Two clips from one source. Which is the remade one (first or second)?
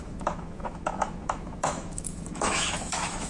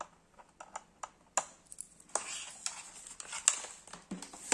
first